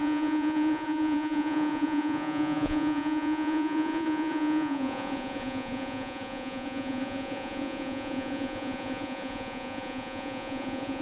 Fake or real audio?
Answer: fake